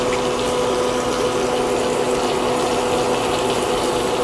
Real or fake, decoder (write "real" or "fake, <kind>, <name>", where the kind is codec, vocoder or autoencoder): real